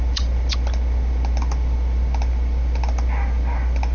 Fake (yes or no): no